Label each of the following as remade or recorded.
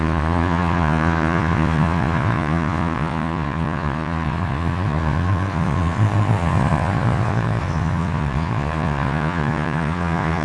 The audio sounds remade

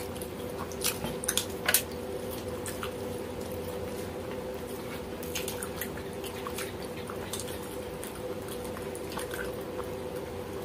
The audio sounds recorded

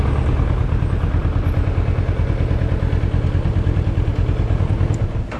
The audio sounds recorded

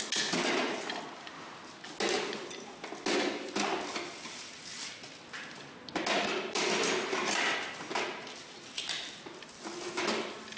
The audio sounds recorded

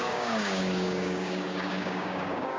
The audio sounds remade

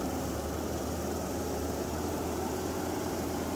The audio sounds remade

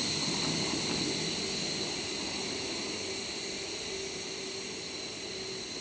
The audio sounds recorded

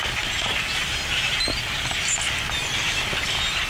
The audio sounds recorded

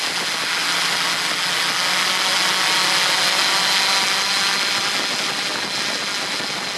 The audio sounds recorded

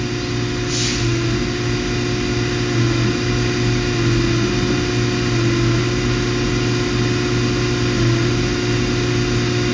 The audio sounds recorded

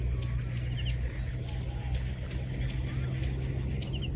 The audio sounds recorded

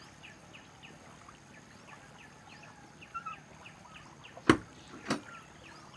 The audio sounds recorded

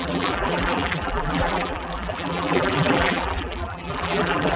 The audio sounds remade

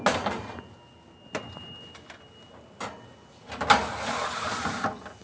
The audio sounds recorded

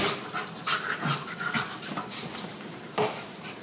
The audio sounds recorded